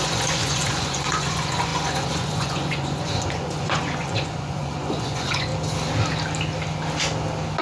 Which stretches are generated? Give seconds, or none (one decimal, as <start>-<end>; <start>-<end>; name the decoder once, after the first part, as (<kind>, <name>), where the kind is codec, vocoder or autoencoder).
0.0-5.5 (vocoder, Vocos)